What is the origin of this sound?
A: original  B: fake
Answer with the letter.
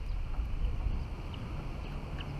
A